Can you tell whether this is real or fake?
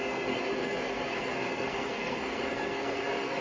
fake